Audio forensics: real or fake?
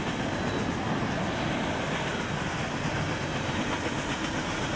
real